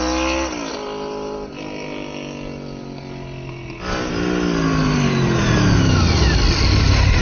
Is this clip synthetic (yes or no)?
no